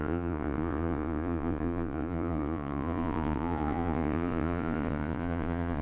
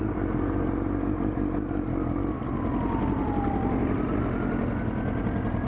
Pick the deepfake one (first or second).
first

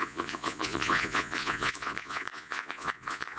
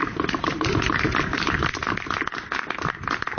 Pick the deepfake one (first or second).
first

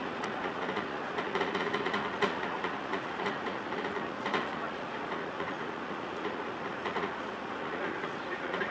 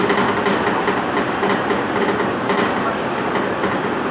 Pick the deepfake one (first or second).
first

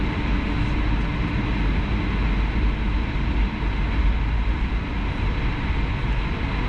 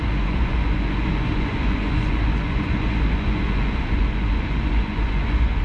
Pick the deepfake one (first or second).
second